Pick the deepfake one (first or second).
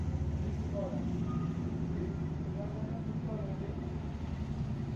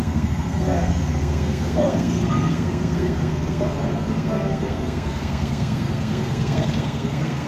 second